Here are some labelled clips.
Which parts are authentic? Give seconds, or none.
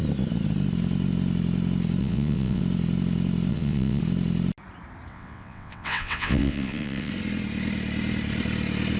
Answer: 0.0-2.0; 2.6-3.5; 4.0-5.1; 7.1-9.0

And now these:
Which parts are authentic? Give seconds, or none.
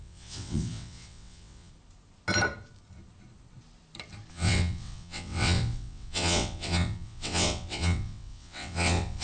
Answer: 1.7-4.3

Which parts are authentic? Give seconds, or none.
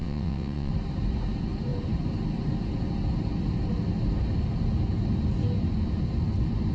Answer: 0.7-6.7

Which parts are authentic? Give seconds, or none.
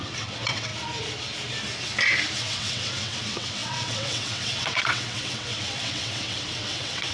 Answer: 0.7-2.4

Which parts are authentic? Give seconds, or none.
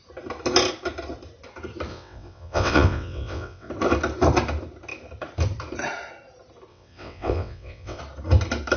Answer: 0.0-1.9; 3.7-6.7; 8.0-8.8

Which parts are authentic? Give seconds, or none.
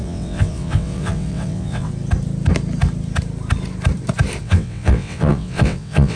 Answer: 1.9-4.4